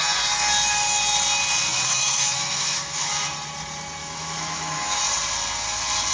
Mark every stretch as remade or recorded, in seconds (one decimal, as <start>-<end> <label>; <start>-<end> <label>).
0.0-1.7 recorded; 1.7-3.3 remade; 3.3-4.0 recorded; 4.0-5.0 remade; 5.0-6.1 recorded